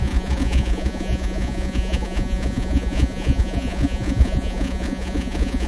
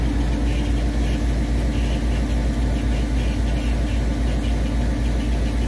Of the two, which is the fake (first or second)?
first